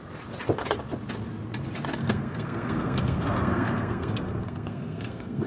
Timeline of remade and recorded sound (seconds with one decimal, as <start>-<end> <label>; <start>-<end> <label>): 0.0-2.0 recorded; 2.0-5.5 remade